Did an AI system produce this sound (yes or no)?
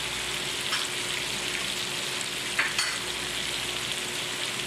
no